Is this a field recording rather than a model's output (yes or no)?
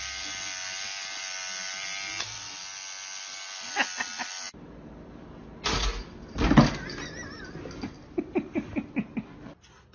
yes